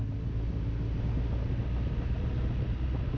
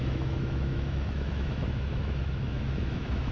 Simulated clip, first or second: second